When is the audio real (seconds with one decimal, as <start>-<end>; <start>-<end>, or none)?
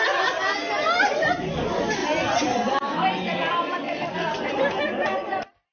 0.0-5.7